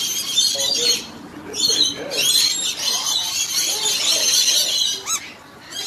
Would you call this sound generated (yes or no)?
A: no